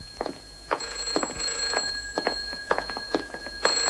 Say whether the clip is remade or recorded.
remade